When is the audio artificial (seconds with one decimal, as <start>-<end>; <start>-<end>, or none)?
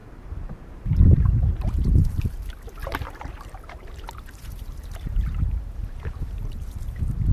0.0-2.2; 2.8-7.3